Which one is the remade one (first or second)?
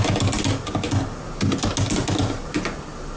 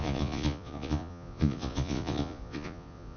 second